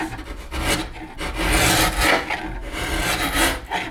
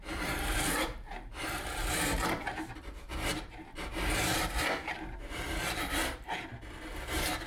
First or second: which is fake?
second